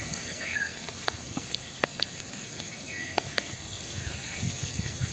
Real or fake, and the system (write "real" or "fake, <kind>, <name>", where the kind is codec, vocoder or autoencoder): fake, codec, SNAC